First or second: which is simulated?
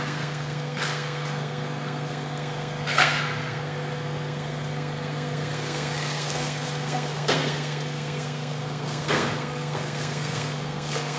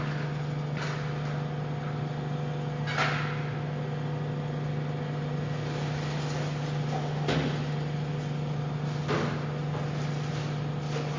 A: first